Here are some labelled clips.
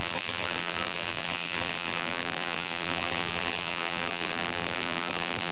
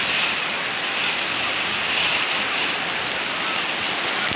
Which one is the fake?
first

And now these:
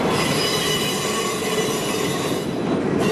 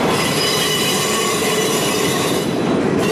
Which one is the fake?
second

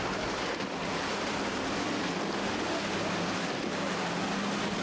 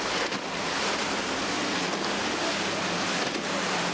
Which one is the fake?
first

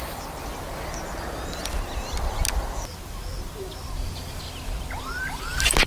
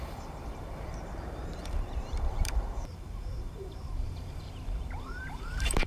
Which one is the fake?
second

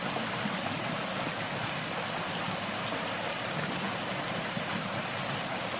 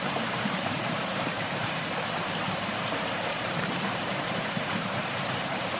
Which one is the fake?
second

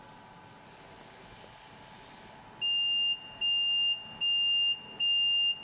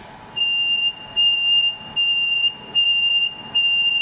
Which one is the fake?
second